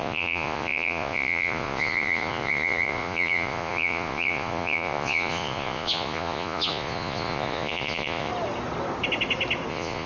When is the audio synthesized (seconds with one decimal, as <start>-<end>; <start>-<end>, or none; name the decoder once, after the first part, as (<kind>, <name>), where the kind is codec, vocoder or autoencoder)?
0.0-8.3 (vocoder, Vocos); 9.7-10.1